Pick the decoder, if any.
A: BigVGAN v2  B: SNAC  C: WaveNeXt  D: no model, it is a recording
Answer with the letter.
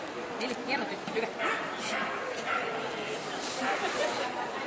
A